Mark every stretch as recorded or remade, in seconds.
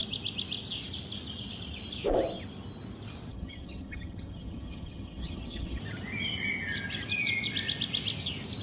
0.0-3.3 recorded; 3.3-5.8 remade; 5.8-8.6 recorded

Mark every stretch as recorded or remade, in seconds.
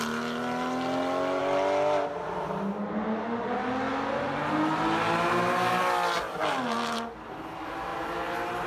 0.0-8.7 recorded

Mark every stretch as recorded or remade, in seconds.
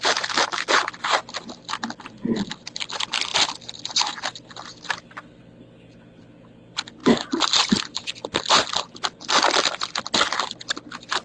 0.0-11.2 recorded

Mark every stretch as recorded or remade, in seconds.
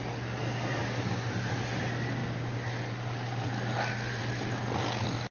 0.0-5.3 recorded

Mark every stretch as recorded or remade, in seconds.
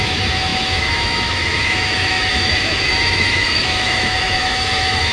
0.0-5.1 remade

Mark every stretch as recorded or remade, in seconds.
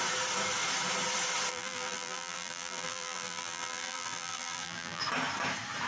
0.0-1.5 recorded; 1.5-5.0 remade; 5.0-5.9 recorded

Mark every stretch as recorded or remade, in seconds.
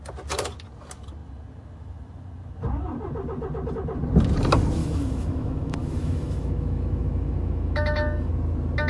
0.0-4.8 recorded; 4.8-8.3 remade; 8.3-8.9 recorded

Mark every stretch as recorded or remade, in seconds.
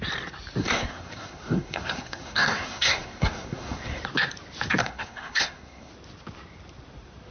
0.0-0.6 recorded; 0.6-4.0 remade; 4.0-4.8 recorded; 4.8-5.9 remade; 5.9-7.3 recorded